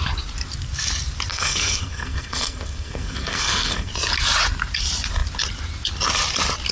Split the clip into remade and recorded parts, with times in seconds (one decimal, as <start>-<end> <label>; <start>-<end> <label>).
0.0-1.3 recorded; 1.3-3.9 remade; 3.9-6.7 recorded